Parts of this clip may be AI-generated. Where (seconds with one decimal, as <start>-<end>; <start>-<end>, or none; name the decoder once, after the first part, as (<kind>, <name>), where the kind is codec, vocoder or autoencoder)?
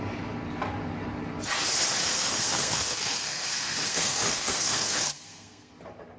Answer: 2.0-5.7 (codec, SNAC)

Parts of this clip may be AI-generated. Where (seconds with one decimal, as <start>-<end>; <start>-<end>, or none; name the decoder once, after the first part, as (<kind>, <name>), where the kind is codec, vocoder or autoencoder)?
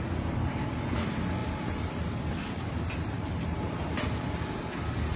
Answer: none